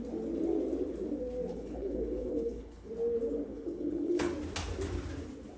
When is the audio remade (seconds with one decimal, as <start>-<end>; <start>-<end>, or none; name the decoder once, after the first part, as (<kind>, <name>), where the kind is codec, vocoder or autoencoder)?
1.5-2.9 (codec, HILCodec); 3.5-4.3